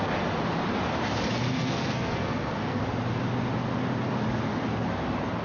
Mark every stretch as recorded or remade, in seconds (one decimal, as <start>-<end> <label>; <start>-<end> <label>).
0.0-1.5 recorded; 1.5-2.8 remade; 2.8-5.4 recorded